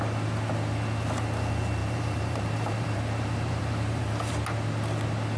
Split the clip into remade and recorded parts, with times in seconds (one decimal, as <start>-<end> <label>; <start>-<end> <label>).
0.0-1.8 recorded; 1.8-4.3 remade; 4.3-5.4 recorded

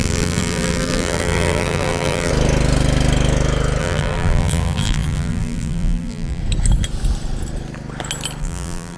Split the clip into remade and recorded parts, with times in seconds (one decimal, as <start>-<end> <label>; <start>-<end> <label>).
0.0-2.3 remade; 2.3-3.8 recorded; 3.8-6.4 remade; 6.4-8.4 recorded; 8.4-9.0 remade

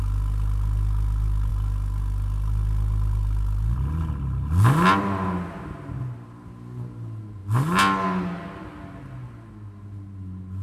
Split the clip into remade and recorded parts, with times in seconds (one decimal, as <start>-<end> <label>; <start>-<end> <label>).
0.0-10.6 recorded

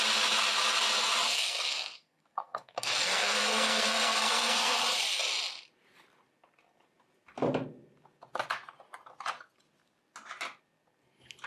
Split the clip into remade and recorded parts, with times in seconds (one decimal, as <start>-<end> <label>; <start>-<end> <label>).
0.0-1.3 recorded; 1.3-4.8 remade; 4.8-11.5 recorded

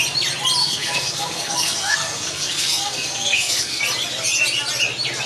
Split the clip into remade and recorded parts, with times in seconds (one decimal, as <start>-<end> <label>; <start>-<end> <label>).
0.0-0.6 recorded; 0.6-3.8 remade; 3.8-5.3 recorded

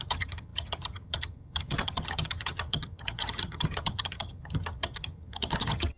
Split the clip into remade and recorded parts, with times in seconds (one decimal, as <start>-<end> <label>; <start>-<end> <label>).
0.0-6.0 remade